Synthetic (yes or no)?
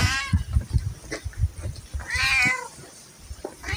no